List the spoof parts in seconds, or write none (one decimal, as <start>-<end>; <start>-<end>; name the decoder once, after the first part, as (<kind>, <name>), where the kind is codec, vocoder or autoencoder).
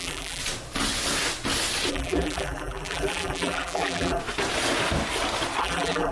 0.0-0.4 (vocoder, BigVGAN v2); 1.9-4.2; 5.6-6.1